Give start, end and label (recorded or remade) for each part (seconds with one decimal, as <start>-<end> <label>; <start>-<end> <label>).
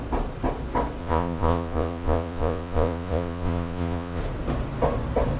0.0-1.0 recorded; 1.0-4.2 remade; 4.2-5.4 recorded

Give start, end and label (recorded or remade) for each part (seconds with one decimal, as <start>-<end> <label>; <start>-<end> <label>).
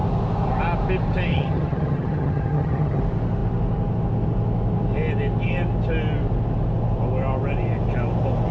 0.0-1.3 recorded; 1.3-3.0 remade; 3.0-8.5 recorded